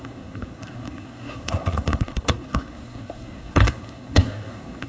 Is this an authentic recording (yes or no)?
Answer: no